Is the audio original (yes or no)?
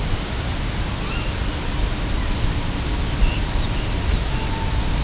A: yes